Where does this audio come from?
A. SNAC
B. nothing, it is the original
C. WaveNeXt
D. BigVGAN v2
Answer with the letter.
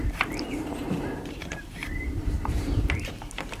D